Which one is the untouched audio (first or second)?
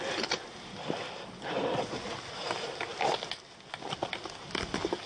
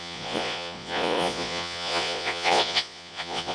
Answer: first